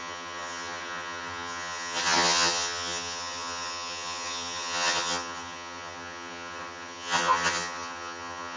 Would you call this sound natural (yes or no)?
no